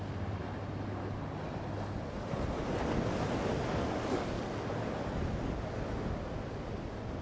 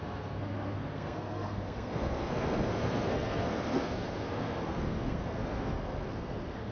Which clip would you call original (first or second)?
first